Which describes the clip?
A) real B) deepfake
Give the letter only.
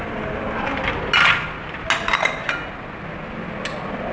A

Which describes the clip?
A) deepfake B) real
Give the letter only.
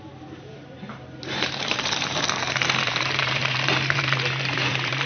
A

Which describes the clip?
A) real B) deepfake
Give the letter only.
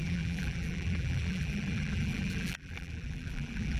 B